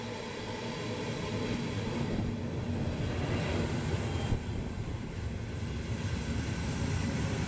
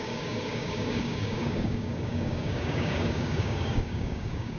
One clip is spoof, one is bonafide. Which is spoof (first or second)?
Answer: second